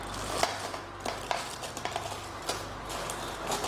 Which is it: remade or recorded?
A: recorded